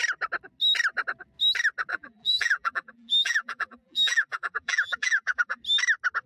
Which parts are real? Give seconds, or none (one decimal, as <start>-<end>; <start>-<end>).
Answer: 0.0-1.9; 5.6-6.3